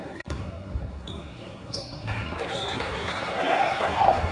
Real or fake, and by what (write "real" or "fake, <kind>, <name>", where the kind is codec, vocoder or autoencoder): fake, codec, SNAC